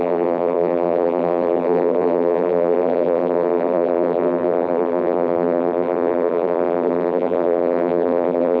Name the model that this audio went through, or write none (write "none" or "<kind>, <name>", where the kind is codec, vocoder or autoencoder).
vocoder, BigVGAN v2